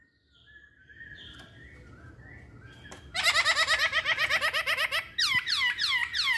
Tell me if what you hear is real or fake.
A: real